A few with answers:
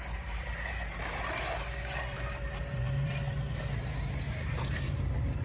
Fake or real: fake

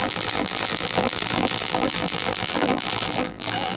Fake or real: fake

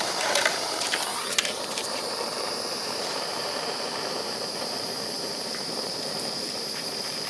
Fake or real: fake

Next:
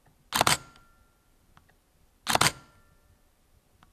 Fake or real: real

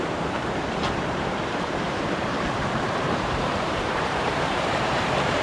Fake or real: fake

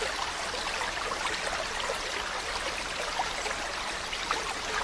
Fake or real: real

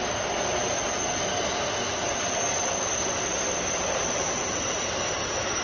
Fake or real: real